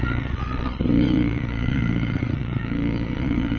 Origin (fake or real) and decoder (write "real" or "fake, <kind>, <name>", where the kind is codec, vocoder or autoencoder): fake, vocoder, Vocos